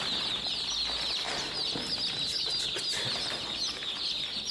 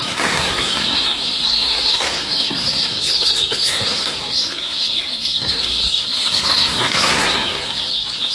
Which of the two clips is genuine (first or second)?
first